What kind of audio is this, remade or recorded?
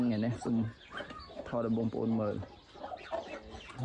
recorded